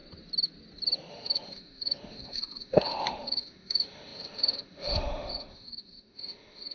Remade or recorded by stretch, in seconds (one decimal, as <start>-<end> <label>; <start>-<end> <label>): 0.0-1.1 recorded; 1.1-6.7 remade